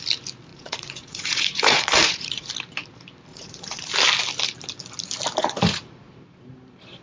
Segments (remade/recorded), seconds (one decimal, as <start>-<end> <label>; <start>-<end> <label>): 0.0-0.5 recorded; 0.5-2.5 remade; 2.5-3.3 recorded; 3.3-3.9 remade; 3.9-5.4 recorded; 5.4-6.2 remade; 6.2-7.0 recorded